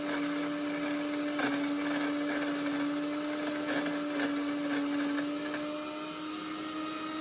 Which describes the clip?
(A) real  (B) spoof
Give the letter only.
A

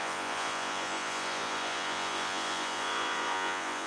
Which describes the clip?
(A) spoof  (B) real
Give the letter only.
A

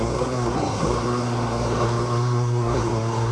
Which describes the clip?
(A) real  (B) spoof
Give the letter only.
B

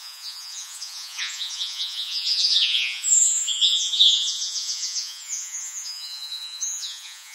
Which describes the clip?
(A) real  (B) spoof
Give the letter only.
B